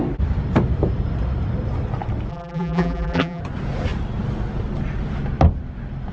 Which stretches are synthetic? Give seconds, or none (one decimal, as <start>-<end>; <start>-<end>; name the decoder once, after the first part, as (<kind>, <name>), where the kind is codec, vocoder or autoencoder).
2.3-3.4 (vocoder, BigVGAN v2)

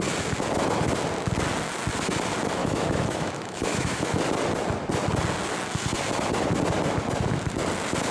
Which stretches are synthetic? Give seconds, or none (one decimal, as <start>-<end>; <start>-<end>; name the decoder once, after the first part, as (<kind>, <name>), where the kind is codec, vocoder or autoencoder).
2.6-4.2 (autoencoder, DAC-VAE)

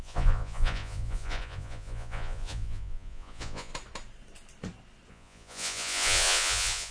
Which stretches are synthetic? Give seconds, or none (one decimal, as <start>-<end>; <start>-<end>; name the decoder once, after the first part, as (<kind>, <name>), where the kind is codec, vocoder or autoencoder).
0.0-3.7 (vocoder, Vocos); 5.1-6.9

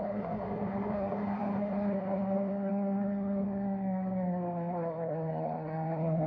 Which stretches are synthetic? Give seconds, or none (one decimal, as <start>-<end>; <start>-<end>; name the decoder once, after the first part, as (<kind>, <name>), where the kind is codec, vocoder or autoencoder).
0.0-6.3 (codec, SNAC)

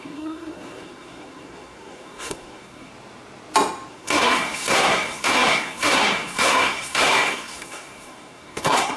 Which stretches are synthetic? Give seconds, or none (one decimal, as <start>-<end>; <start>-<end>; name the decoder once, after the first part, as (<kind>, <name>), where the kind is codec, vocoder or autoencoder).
0.0-2.9 (codec, SNAC); 3.9-9.0